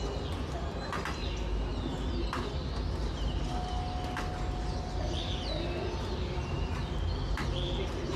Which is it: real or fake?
real